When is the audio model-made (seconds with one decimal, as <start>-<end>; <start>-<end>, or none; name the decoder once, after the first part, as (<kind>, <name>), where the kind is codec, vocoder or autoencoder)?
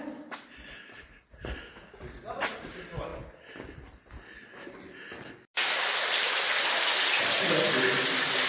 5.6-6.6 (vocoder, BigVGAN v2)